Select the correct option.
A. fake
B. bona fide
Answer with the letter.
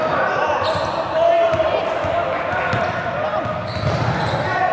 B